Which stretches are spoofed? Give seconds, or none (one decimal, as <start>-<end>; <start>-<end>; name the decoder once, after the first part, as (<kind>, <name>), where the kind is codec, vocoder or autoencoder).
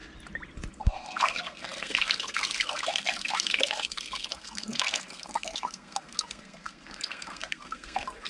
0.7-8.3 (codec, SNAC)